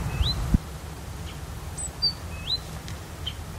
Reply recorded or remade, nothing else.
recorded